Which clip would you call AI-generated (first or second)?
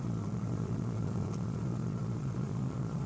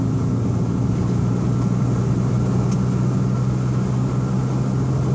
first